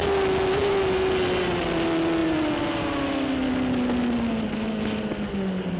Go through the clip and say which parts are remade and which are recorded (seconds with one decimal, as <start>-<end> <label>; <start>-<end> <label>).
0.0-5.8 recorded